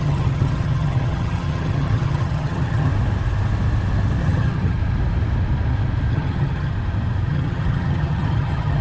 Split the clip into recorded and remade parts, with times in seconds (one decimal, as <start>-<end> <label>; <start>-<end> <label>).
0.0-2.9 remade; 2.9-4.2 recorded; 4.2-4.8 remade; 4.8-6.1 recorded; 6.1-6.7 remade; 6.7-7.3 recorded; 7.3-8.8 remade